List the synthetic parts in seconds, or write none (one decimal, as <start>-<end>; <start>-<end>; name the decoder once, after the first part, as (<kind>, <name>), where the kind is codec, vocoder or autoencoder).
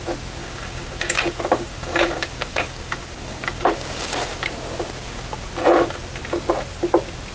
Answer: 0.4-4.5 (codec, DAC)